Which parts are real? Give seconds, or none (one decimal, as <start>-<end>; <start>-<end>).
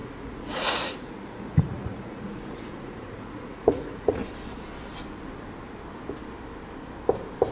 4.2-7.5